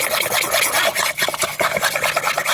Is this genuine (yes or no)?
yes